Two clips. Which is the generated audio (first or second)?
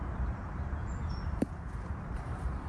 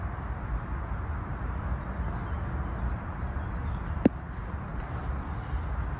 first